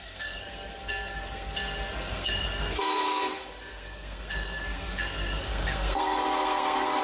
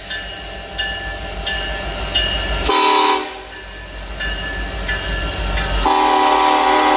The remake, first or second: first